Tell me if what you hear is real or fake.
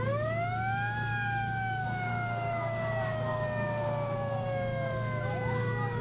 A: fake